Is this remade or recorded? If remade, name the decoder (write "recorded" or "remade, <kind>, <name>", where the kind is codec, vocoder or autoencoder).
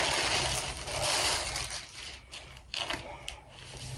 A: recorded